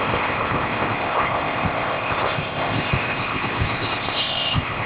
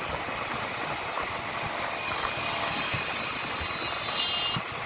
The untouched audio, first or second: second